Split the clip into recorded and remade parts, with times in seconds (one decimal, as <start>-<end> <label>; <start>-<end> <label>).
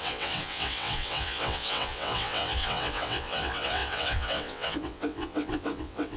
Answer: 0.0-6.2 remade